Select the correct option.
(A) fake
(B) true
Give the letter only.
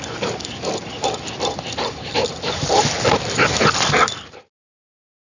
B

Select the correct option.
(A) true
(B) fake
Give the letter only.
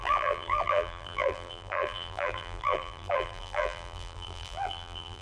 B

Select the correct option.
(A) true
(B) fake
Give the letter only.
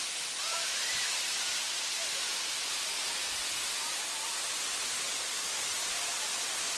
B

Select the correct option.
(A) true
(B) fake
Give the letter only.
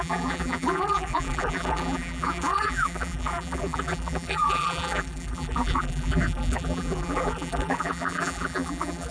B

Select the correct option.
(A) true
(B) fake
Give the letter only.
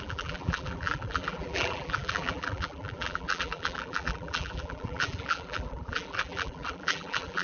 B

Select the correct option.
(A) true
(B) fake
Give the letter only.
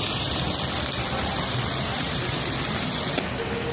B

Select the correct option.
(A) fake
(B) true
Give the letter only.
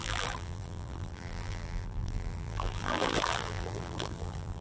A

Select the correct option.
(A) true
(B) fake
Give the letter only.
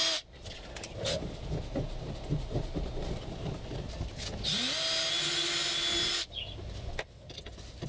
A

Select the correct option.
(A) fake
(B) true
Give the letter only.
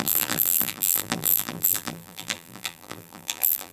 A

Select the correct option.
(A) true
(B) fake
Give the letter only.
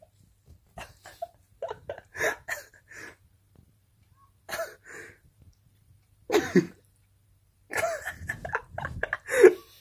B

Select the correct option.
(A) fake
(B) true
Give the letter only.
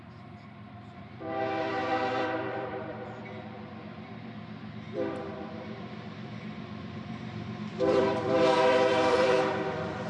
A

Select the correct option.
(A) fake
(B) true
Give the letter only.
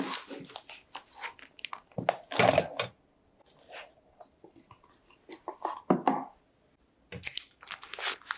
B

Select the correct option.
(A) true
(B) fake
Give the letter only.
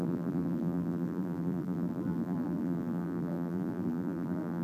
B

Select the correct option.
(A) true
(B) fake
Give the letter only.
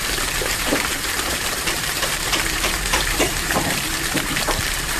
B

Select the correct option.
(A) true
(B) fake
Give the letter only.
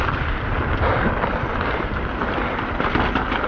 B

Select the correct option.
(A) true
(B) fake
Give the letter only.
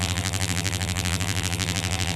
B